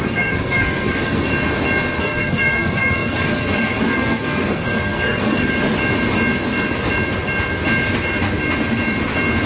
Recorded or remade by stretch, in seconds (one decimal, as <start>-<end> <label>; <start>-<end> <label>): 0.0-1.3 remade; 1.3-2.0 recorded; 2.0-5.5 remade; 5.5-9.5 recorded